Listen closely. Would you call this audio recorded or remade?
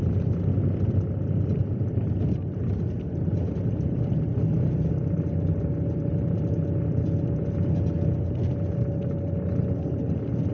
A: recorded